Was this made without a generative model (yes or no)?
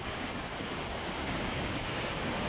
no